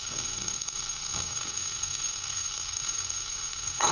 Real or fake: fake